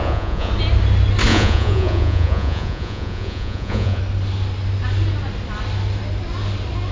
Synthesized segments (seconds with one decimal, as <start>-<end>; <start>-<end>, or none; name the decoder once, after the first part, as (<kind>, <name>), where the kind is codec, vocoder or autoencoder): 0.0-0.5 (vocoder, Vocos); 1.3-4.0